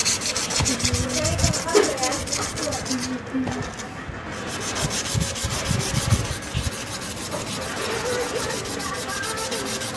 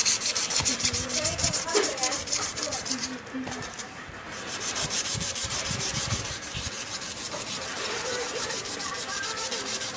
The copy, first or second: second